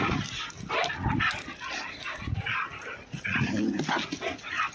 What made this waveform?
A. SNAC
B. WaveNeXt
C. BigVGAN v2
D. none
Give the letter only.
D